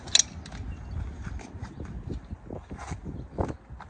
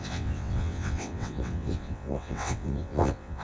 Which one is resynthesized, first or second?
second